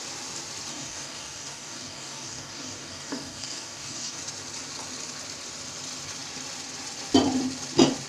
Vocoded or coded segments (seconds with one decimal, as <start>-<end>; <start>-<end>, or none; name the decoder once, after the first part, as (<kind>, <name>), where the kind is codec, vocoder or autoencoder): 0.7-4.2 (codec, DAC)